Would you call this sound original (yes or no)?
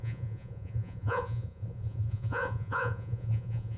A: no